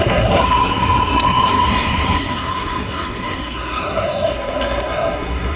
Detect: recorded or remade remade